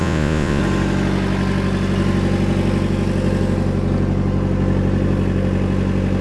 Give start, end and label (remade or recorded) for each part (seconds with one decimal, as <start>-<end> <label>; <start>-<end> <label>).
0.0-0.6 remade; 0.6-6.2 recorded